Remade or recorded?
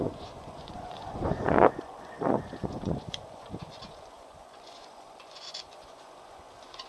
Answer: remade